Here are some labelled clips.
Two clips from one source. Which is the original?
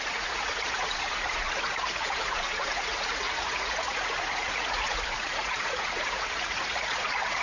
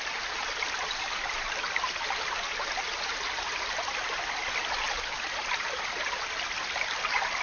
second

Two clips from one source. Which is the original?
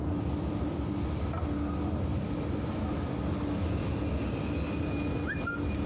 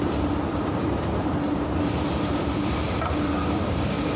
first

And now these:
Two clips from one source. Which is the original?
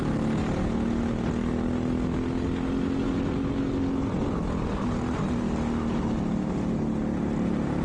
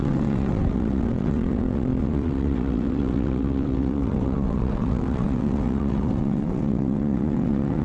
first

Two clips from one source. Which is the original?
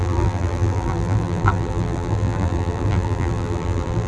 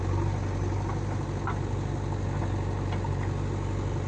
second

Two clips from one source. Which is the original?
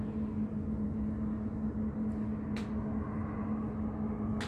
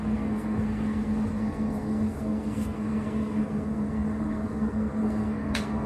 first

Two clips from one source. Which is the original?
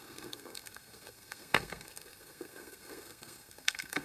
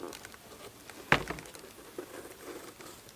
second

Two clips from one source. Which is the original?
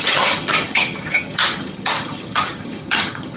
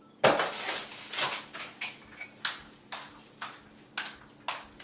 second